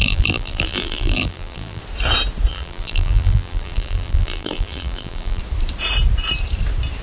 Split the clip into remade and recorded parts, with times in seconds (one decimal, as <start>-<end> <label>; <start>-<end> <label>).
0.0-1.8 remade; 1.8-2.5 recorded; 2.5-5.4 remade; 5.4-7.0 recorded